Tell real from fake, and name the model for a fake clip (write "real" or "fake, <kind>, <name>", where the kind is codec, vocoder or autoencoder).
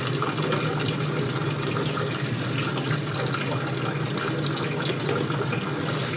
real